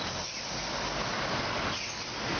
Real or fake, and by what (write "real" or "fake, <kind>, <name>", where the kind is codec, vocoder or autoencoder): real